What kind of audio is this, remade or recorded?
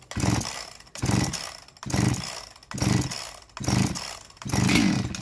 recorded